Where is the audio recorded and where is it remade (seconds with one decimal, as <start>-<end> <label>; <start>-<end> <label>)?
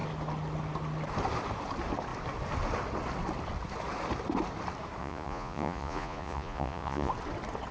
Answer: 0.0-5.0 recorded; 5.0-7.1 remade; 7.1-7.7 recorded